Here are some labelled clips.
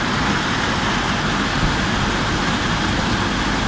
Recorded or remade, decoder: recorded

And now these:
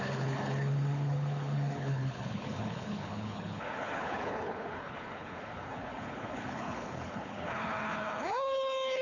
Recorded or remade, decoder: remade, codec, HILCodec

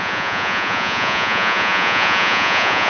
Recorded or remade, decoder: remade, vocoder, Vocos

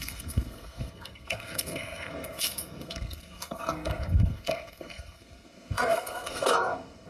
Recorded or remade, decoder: remade, codec, SNAC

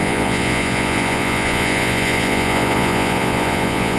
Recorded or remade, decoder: remade, vocoder, Vocos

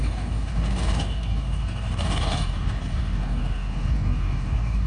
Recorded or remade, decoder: remade, codec, DAC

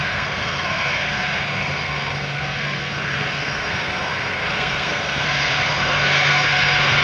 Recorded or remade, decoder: remade, codec, SNAC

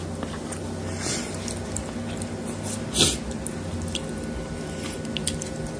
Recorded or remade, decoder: recorded